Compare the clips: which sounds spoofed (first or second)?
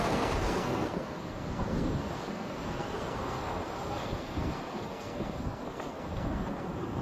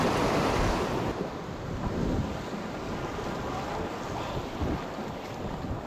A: first